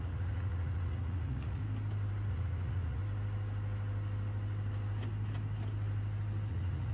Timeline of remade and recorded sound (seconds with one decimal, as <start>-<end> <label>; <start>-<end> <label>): 0.0-1.6 remade; 1.6-2.3 recorded; 2.3-3.0 remade; 3.0-6.5 recorded; 6.5-6.9 remade